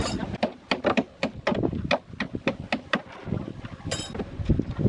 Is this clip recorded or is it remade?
recorded